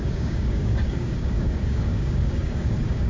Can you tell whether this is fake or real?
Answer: fake